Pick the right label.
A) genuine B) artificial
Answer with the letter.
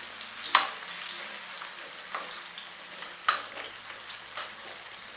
A